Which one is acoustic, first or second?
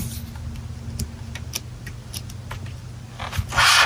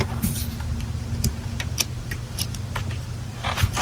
first